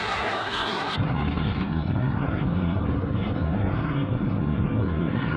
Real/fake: fake